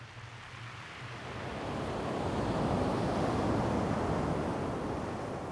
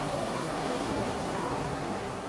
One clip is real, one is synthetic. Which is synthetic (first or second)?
second